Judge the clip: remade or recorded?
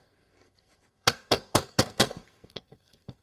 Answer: remade